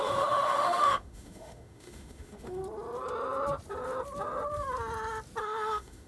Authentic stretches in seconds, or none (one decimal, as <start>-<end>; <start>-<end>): 2.6-5.4

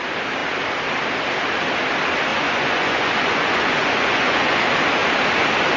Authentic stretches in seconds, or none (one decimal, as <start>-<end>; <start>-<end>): 0.0-2.3; 4.6-5.8

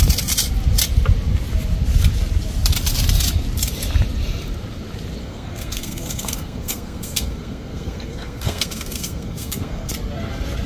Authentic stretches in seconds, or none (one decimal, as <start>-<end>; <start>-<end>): 0.0-5.2; 9.9-10.7

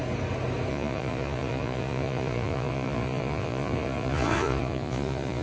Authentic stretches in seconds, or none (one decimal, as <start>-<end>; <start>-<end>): 0.0-0.7

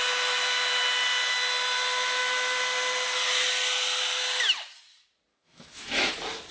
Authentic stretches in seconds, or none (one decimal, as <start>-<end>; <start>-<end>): 0.0-5.3; 6.1-6.5

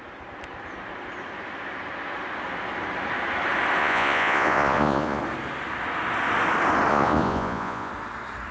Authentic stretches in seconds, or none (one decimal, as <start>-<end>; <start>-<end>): 0.0-3.8; 5.2-6.9; 7.9-8.5

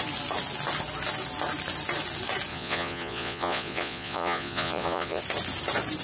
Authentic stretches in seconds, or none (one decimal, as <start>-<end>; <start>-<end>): 0.0-2.5; 5.2-6.0